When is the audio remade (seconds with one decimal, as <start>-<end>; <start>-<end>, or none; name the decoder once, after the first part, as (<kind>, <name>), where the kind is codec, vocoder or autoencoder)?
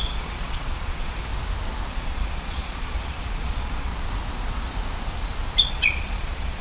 0.0-1.3 (vocoder, Vocos); 1.9-3.9; 5.7-6.6